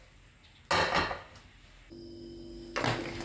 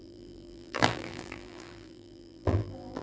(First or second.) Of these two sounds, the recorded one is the first